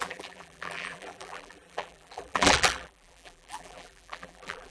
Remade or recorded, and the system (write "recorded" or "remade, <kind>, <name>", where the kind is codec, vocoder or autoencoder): remade, vocoder, BigVGAN v2